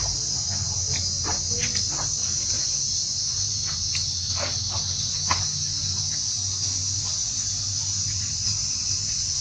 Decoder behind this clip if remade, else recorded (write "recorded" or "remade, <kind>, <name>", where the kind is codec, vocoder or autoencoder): recorded